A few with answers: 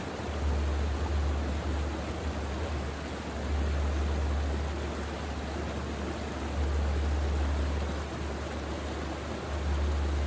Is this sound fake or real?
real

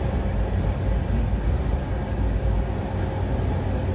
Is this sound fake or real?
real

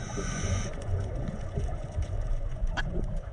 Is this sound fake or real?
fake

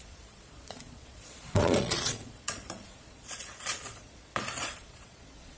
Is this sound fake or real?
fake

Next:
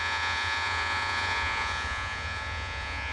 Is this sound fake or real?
fake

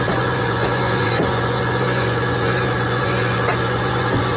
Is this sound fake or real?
fake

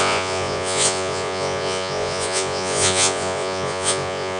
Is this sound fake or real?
fake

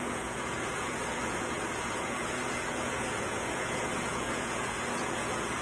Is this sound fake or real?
fake